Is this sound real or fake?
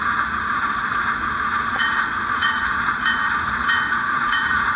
fake